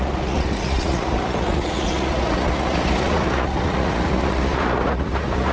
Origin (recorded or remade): remade